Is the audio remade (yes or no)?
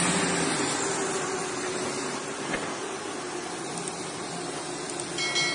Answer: no